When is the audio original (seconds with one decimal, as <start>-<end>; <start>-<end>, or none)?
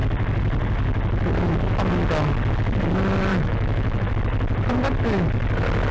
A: 0.0-3.3; 4.1-5.9